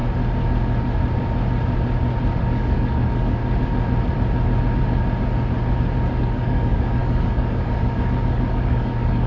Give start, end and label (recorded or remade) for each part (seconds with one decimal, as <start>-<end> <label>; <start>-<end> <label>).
0.0-2.4 recorded; 2.4-3.4 remade; 3.4-6.2 recorded; 6.2-9.3 remade